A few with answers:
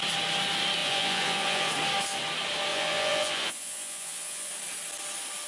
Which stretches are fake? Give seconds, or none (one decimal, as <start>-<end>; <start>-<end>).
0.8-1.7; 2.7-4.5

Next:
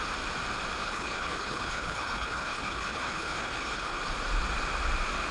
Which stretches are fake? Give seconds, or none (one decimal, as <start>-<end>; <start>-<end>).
0.8-4.0

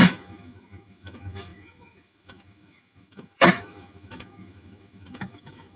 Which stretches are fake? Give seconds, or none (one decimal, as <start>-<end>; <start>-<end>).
0.0-5.8

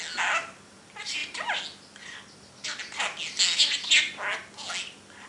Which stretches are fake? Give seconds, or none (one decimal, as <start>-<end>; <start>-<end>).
none